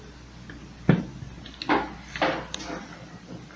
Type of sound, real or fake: real